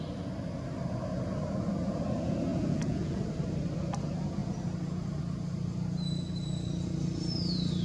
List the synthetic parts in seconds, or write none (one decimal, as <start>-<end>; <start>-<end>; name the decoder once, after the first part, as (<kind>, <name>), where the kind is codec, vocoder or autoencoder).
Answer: 2.5-3.2 (vocoder, Vocos)